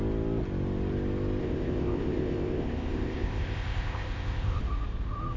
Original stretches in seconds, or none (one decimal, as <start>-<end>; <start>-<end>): 0.0-1.4; 4.6-5.4